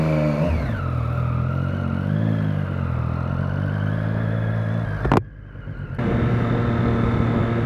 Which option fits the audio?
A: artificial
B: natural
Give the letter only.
B